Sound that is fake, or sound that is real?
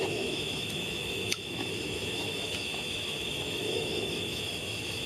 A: fake